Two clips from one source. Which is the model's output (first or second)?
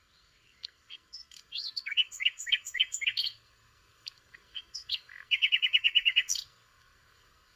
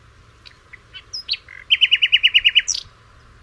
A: first